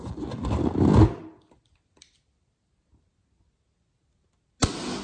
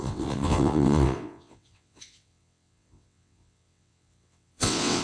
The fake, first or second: second